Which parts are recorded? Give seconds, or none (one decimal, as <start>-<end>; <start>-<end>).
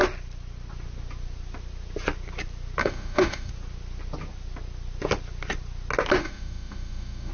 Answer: 0.0-2.8; 3.5-6.2